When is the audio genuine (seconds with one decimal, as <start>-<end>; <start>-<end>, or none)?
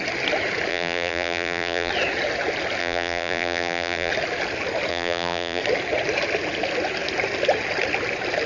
0.0-0.7; 1.9-2.8; 4.1-4.9; 5.6-8.5